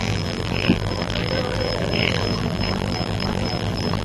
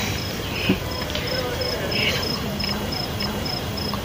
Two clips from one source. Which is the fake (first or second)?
first